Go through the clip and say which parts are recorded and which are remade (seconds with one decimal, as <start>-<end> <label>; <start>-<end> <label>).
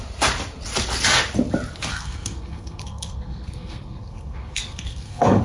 0.0-1.9 recorded; 1.9-5.4 remade